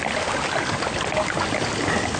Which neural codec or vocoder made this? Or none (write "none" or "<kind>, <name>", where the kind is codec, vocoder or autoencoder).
none